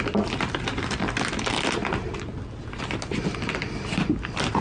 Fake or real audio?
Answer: real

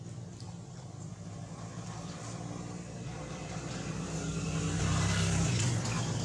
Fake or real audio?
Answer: real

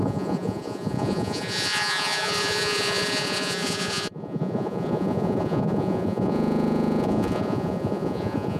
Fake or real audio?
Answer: fake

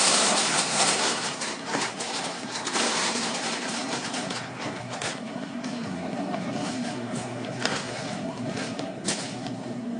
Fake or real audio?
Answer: fake